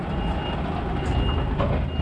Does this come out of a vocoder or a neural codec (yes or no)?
no